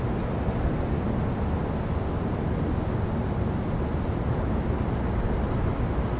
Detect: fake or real real